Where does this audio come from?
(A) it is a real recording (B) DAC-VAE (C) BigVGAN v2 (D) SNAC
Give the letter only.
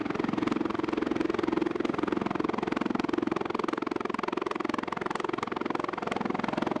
A